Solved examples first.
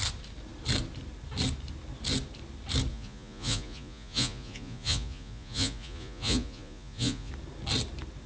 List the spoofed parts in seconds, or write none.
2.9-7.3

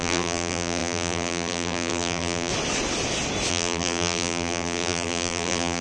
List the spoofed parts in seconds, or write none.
0.0-2.5; 3.5-5.8

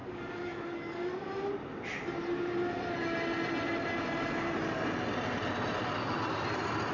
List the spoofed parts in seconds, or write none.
0.0-1.0

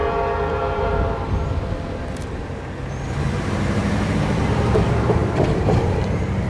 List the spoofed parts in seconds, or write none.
3.5-6.5

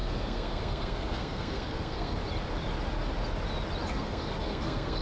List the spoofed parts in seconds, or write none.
0.0-2.2; 3.9-5.0

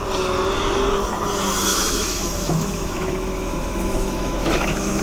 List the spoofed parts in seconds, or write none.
1.7-5.0

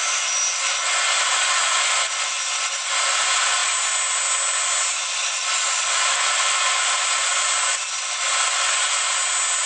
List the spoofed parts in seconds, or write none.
none

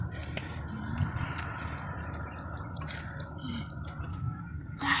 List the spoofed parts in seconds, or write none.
4.1-5.0